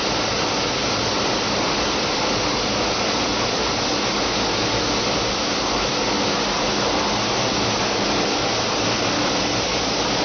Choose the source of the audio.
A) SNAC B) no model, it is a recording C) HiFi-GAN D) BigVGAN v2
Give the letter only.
B